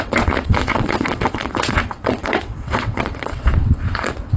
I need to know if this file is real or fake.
fake